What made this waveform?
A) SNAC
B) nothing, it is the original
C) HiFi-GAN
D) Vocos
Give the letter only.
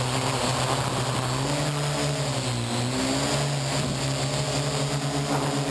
B